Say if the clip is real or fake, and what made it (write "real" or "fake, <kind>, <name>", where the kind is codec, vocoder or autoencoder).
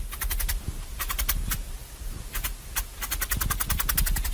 real